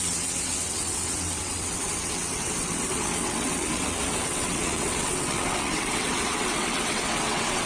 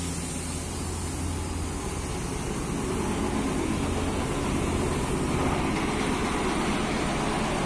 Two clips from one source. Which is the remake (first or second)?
first